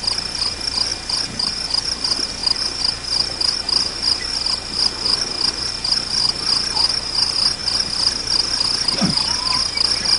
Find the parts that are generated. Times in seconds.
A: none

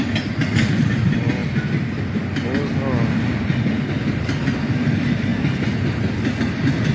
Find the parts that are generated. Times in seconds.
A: 0.0-1.4 (vocoder, BigVGAN v2); 3.5-5.3; 6.4-6.9

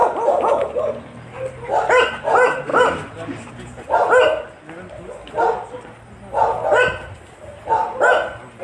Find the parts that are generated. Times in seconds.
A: 2.7-3.5 (vocoder, BigVGAN v2)

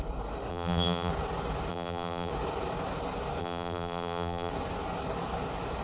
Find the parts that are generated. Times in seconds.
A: 0.5-1.1 (vocoder, BigVGAN v2); 1.7-2.3; 3.4-4.5

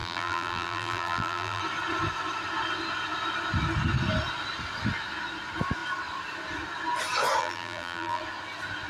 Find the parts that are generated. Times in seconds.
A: 0.0-1.6 (vocoder, BigVGAN v2); 7.4-8.2

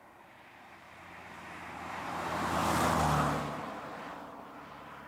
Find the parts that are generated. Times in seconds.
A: 0.0-2.6 (vocoder, BigVGAN v2); 3.5-5.1

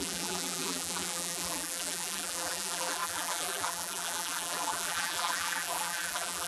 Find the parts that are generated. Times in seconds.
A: 0.0-6.5 (vocoder, BigVGAN v2)

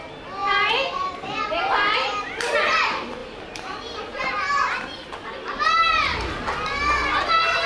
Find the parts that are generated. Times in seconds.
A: 0.4-2.5 (vocoder, BigVGAN v2); 3.2-5.7